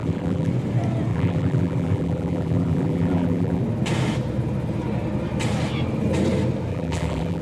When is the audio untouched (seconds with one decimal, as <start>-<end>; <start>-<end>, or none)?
0.5-1.1; 3.6-6.7